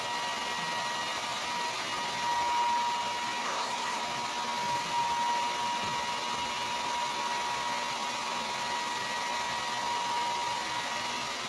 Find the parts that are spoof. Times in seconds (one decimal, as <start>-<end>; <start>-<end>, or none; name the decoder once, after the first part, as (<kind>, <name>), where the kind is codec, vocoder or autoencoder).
3.4-4.0 (codec, SNAC)